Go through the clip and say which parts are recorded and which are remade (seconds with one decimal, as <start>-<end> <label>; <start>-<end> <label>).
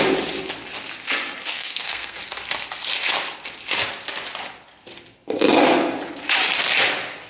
0.0-1.5 recorded; 1.5-2.2 remade; 2.2-7.3 recorded